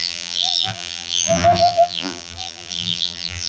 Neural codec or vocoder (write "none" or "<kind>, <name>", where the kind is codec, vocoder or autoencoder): vocoder, BigVGAN v2